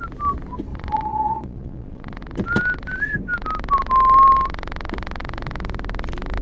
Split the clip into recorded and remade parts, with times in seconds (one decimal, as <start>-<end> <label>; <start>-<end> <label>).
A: 0.0-0.7 recorded; 0.7-2.2 remade; 2.2-6.4 recorded